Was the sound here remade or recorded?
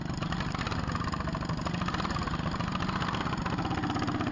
recorded